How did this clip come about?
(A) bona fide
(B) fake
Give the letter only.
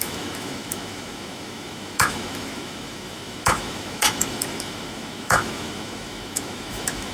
B